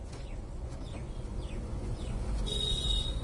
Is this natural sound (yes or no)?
no